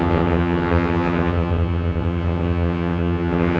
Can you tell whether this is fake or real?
fake